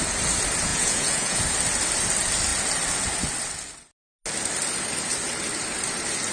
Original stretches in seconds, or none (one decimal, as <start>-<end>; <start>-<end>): 0.0-0.7; 1.4-6.3